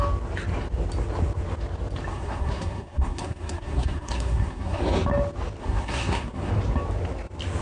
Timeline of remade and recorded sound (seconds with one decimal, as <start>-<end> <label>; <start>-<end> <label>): 0.0-2.1 recorded; 2.1-4.8 remade; 4.8-5.6 recorded; 5.6-6.5 remade; 6.5-7.6 recorded